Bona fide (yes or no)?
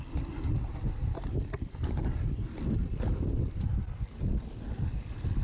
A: yes